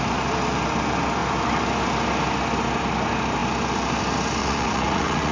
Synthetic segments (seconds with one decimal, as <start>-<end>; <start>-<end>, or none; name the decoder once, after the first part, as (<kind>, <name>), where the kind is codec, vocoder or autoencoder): 4.4-5.3 (vocoder, Vocos)